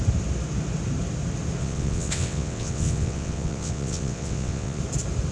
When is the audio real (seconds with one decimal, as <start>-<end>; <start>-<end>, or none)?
0.0-1.6; 4.8-5.3